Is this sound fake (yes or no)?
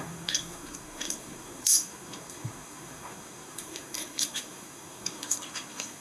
yes